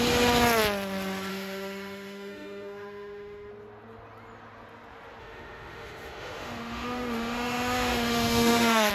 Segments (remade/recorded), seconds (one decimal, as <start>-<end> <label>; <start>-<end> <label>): 0.0-1.3 recorded; 1.3-3.5 remade; 3.5-5.2 recorded; 5.2-8.9 remade